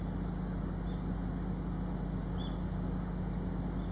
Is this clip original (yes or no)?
yes